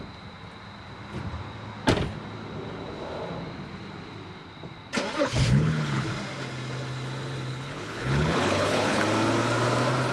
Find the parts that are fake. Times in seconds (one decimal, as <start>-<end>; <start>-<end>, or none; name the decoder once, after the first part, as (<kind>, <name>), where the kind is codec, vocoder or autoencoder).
5.2-6.1 (codec, HILCodec); 7.5-9.0